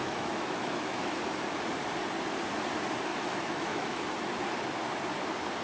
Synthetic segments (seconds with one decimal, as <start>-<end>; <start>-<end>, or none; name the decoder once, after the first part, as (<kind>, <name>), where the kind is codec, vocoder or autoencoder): 0.0-1.2 (autoencoder, DAC-VAE); 3.1-4.1